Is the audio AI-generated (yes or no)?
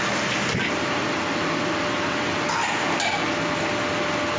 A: no